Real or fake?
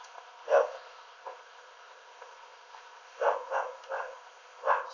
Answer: fake